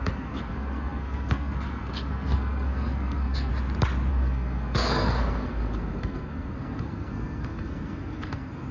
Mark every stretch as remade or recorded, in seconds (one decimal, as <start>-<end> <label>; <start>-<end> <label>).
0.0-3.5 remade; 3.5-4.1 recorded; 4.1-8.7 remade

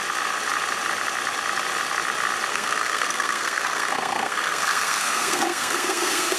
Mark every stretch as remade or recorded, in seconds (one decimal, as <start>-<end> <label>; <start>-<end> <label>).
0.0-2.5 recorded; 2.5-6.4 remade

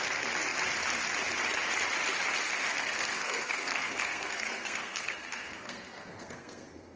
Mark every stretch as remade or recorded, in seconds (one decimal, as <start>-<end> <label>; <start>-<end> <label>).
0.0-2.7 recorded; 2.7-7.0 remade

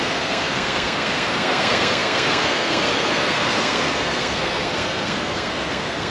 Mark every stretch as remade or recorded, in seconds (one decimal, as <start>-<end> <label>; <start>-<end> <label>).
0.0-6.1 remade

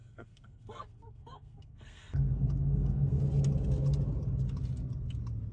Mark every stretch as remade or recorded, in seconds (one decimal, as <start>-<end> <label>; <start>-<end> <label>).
0.0-3.2 remade; 3.2-5.5 recorded